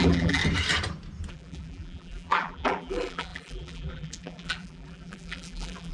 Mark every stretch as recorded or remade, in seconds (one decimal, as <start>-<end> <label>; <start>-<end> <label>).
0.0-0.4 remade; 0.4-1.3 recorded; 1.3-5.9 remade